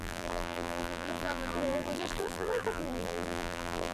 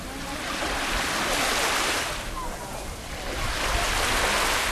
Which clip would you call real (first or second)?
second